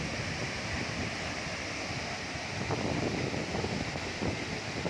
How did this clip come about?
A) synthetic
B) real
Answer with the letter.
B